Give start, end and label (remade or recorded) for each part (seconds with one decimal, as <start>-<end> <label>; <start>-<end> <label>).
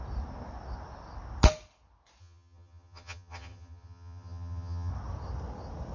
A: 0.0-2.2 recorded; 2.2-4.9 remade; 4.9-5.9 recorded